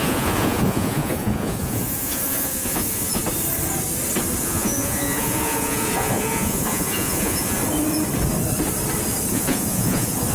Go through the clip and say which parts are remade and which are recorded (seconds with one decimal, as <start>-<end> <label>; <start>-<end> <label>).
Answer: 0.0-3.2 remade; 3.2-4.4 recorded; 4.4-7.6 remade; 7.6-9.3 recorded; 9.3-10.3 remade

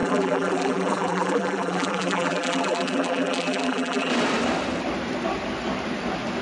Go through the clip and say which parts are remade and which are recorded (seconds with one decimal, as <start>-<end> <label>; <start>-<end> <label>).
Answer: 0.0-4.1 remade; 4.1-6.4 recorded

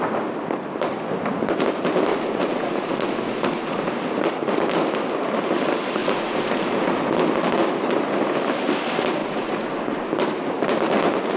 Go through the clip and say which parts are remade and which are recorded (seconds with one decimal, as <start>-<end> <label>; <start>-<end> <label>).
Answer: 0.0-2.1 recorded; 2.1-3.9 remade; 3.9-6.0 recorded; 6.0-7.1 remade; 7.1-9.2 recorded; 9.2-10.1 remade; 10.1-11.4 recorded

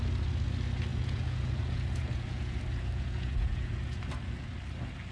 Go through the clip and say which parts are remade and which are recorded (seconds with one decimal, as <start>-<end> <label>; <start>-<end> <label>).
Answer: 0.0-0.9 recorded; 0.9-4.0 remade; 4.0-5.1 recorded

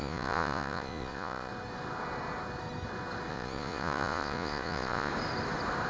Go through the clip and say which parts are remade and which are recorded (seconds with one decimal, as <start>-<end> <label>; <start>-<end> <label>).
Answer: 0.0-1.5 remade; 1.5-3.3 recorded; 3.3-5.1 remade; 5.1-5.9 recorded

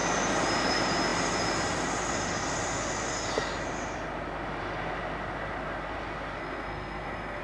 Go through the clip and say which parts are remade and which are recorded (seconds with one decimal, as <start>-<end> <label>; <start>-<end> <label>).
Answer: 0.0-6.4 recorded; 6.4-7.4 remade